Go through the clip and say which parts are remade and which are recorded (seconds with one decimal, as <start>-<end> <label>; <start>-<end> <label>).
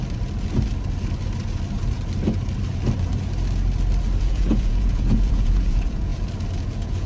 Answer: 0.0-4.2 recorded; 4.2-6.1 remade; 6.1-6.6 recorded; 6.6-7.1 remade